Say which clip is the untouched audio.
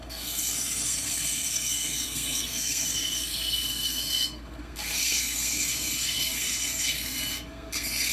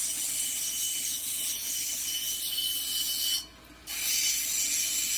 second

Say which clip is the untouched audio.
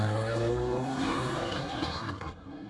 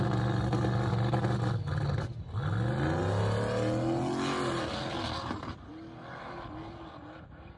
second